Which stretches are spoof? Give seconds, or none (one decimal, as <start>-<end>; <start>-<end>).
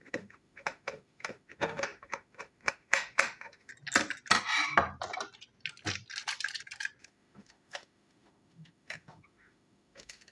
0.0-3.7; 7.0-10.3